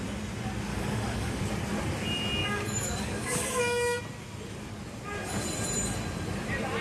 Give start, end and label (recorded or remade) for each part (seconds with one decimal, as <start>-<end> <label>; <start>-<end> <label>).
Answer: 0.0-0.7 recorded; 0.7-1.4 remade; 1.4-2.4 recorded; 2.4-4.0 remade; 4.0-6.8 recorded